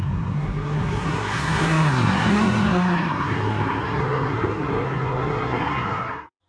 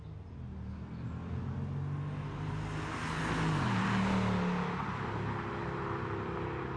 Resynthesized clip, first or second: first